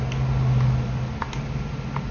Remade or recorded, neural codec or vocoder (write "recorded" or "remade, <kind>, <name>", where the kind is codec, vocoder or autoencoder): recorded